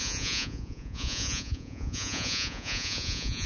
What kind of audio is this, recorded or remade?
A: remade